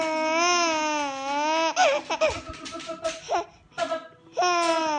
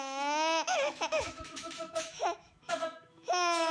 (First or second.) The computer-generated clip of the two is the second